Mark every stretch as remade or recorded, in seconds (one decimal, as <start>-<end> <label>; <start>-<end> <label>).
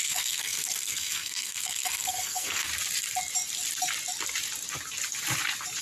0.0-2.7 remade; 2.7-5.8 recorded